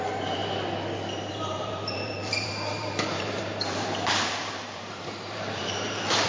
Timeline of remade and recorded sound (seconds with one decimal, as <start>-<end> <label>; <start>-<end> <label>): 0.0-0.4 remade; 0.4-1.3 recorded; 1.3-6.3 remade